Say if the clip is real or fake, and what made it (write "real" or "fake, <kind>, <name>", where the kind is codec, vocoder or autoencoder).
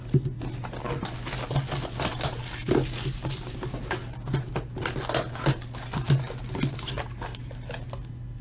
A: real